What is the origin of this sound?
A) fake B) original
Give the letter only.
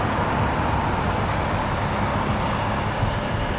B